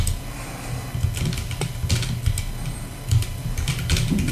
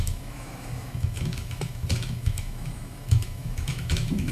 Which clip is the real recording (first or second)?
first